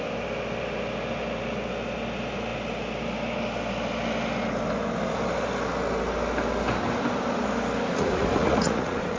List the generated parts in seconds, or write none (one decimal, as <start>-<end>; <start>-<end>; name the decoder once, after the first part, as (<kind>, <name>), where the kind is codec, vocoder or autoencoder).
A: 7.9-9.2 (vocoder, Vocos)